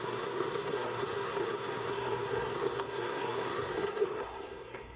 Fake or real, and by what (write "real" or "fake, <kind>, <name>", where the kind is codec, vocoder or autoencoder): fake, codec, SNAC